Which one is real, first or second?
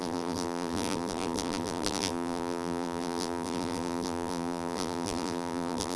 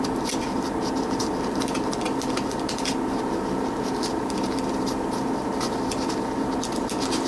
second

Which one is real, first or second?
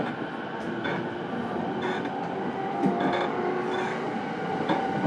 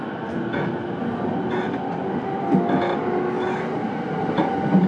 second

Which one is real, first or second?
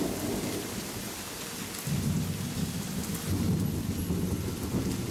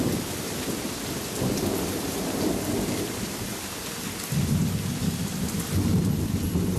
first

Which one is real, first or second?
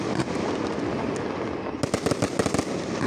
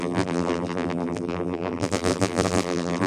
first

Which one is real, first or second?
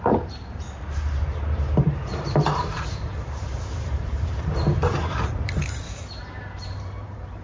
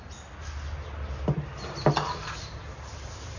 second